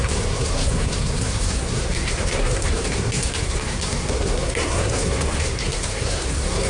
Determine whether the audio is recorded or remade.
remade